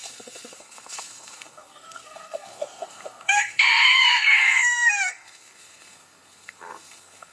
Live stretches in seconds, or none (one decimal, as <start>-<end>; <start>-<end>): none